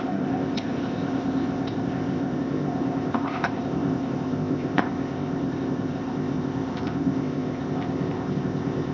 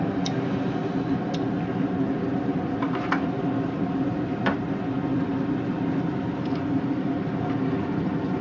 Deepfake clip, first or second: first